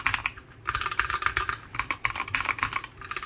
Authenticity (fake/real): fake